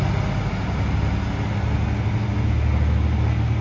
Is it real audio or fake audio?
real